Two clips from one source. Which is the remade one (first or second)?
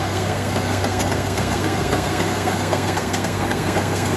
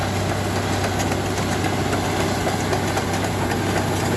first